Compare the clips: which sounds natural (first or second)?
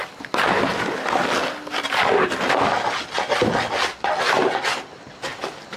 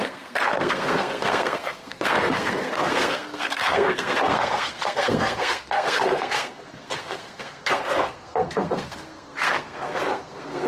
first